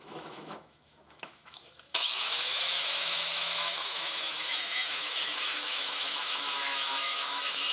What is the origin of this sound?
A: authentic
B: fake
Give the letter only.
B